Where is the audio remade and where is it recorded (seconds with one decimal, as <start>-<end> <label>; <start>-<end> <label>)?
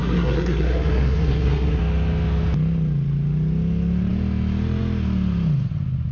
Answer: 0.0-1.8 remade; 1.8-6.1 recorded